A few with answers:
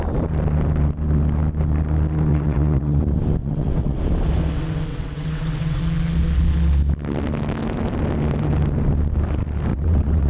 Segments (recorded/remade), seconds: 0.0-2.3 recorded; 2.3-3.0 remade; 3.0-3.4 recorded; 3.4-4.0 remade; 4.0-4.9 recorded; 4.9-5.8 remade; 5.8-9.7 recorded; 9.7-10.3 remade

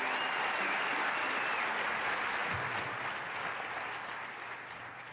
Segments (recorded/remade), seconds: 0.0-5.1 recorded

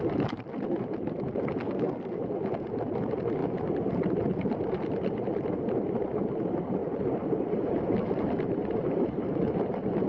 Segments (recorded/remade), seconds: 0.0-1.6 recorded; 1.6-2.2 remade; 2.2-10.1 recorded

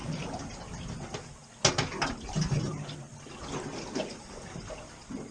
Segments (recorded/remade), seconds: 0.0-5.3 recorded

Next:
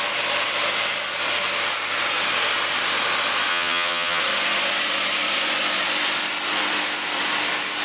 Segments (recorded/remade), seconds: 0.0-3.5 recorded; 3.5-4.2 remade; 4.2-7.8 recorded

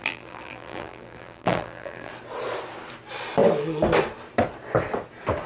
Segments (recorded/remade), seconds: 0.0-2.1 remade; 2.1-5.5 recorded

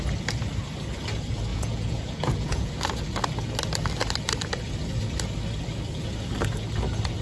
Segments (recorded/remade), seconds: 0.0-1.5 recorded; 1.5-2.7 remade; 2.7-7.2 recorded

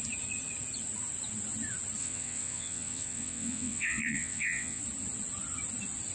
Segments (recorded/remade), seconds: 0.0-2.0 recorded; 2.0-4.8 remade; 4.8-6.1 recorded